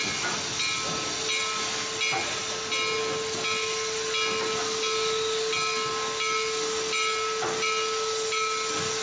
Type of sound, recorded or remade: recorded